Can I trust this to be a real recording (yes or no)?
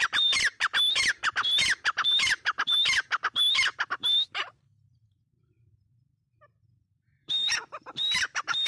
no